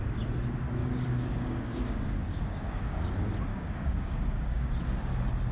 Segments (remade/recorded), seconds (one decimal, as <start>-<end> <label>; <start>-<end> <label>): 0.0-0.8 recorded; 0.8-3.1 remade; 3.1-3.5 recorded; 3.5-4.7 remade; 4.7-5.5 recorded